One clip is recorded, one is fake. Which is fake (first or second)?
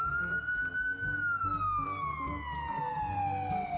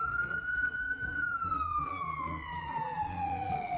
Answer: second